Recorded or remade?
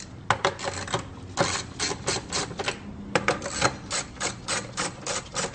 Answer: recorded